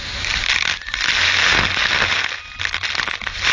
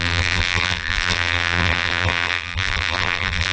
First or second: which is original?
first